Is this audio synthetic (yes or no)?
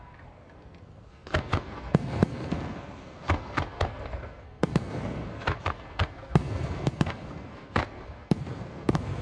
yes